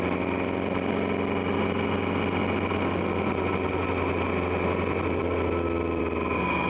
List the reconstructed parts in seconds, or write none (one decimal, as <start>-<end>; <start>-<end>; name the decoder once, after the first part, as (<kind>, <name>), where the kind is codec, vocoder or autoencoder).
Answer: none